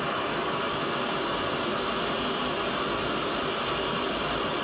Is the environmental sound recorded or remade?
recorded